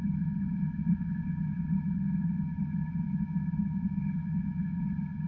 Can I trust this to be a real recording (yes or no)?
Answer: no